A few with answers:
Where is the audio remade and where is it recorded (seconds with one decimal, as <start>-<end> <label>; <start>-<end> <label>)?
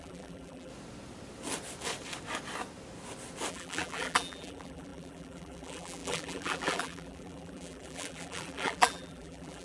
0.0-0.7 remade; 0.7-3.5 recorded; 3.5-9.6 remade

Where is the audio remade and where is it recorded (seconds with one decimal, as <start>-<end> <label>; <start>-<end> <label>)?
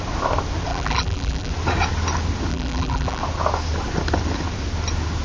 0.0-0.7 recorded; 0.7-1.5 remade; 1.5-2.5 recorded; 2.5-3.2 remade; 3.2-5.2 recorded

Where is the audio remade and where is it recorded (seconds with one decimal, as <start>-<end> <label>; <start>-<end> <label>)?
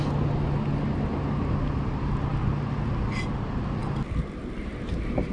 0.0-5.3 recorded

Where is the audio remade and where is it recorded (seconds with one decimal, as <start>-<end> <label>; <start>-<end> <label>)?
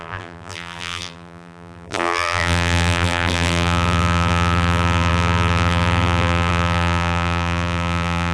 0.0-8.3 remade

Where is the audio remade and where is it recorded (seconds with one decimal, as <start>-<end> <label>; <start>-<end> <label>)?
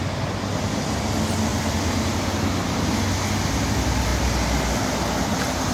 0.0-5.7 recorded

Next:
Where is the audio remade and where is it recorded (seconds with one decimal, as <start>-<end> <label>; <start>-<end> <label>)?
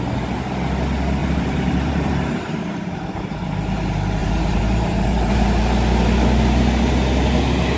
0.0-1.2 recorded; 1.2-3.3 remade; 3.3-4.2 recorded; 4.2-5.6 remade; 5.6-7.8 recorded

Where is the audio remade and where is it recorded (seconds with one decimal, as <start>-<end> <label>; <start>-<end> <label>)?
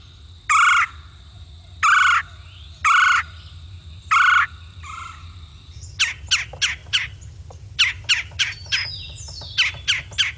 0.0-2.8 recorded; 2.8-4.4 remade; 4.4-6.8 recorded; 6.8-8.9 remade; 8.9-10.4 recorded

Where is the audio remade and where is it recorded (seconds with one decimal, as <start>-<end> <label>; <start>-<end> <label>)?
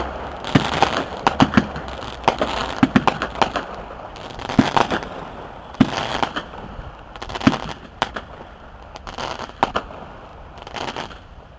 0.0-6.1 recorded; 6.1-7.3 remade; 7.3-10.3 recorded; 10.3-11.6 remade